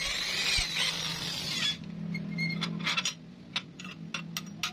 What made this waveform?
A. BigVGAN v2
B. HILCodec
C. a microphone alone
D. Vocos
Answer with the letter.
C